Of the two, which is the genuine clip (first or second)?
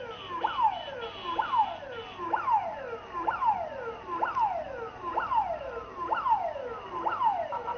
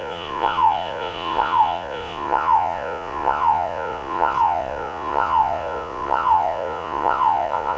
first